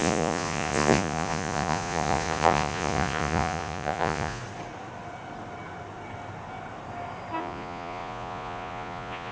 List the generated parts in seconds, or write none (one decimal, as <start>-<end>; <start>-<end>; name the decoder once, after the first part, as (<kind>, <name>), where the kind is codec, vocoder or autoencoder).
0.0-4.4 (vocoder, Vocos); 7.4-9.3